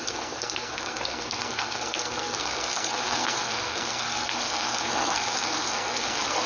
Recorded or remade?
remade